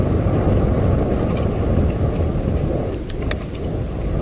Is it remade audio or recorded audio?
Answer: recorded